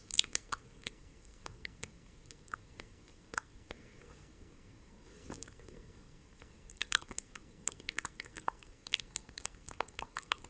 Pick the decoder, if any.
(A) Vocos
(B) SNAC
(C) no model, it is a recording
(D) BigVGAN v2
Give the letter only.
B